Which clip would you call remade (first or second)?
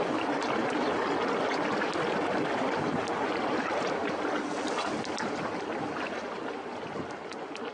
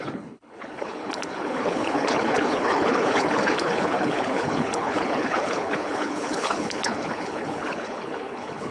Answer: second